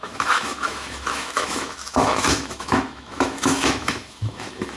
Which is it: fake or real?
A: fake